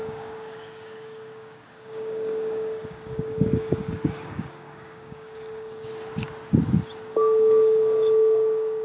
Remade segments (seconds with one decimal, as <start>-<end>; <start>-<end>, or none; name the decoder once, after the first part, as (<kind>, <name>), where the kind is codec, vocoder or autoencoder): 0.0-5.9 (codec, DAC); 7.1-8.8